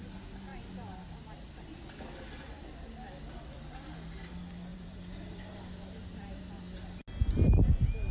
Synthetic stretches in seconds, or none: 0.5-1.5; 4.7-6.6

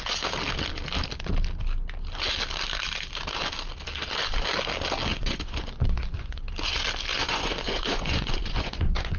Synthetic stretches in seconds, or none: 5.1-6.4; 7.1-9.2

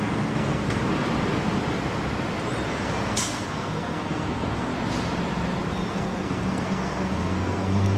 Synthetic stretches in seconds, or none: 0.0-0.8; 2.7-4.7; 5.9-8.0

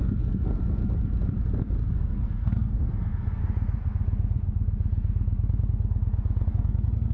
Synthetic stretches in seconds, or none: 0.0-0.8; 1.9-3.4; 6.5-7.1

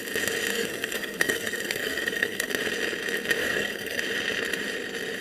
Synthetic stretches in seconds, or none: 0.5-2.5; 3.4-4.0

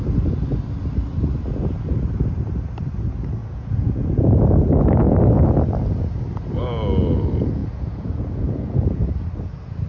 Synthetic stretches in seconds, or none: 3.4-4.4; 7.6-9.0

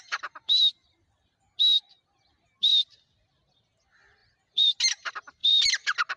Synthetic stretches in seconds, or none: 4.2-4.7